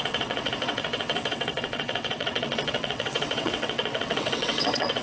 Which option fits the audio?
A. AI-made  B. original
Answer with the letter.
A